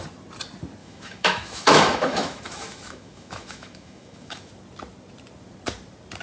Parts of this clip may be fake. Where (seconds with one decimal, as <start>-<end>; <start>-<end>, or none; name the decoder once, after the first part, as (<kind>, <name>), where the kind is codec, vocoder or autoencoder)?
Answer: 0.8-4.5 (autoencoder, DAC-VAE)